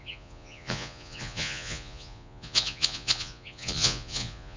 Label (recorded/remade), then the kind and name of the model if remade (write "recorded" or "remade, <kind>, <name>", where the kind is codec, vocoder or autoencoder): remade, vocoder, Vocos